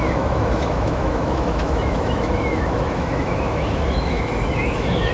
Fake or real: fake